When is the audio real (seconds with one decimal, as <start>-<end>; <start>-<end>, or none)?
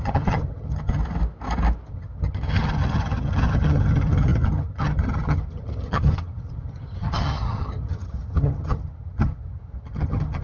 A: 1.0-1.9